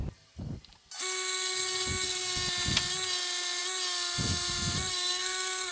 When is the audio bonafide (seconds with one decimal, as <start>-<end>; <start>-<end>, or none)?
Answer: 0.0-4.9